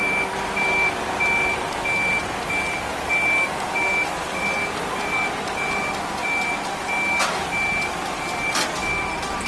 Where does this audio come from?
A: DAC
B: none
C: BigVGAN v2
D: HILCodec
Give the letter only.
B